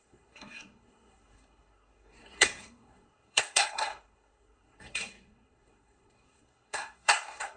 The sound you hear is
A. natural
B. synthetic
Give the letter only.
B